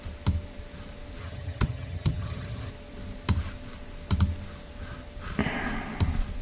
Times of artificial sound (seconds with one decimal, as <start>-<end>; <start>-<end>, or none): 1.2-2.7